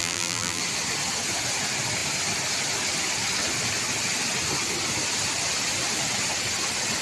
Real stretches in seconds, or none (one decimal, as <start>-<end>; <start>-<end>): 0.6-7.0